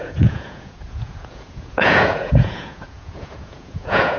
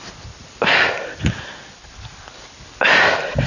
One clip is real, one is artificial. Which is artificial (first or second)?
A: first